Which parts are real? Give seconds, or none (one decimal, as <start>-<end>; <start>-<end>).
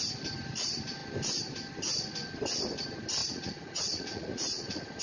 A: 0.0-3.2